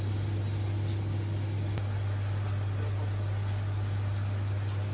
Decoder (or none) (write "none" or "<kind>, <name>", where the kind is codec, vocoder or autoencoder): none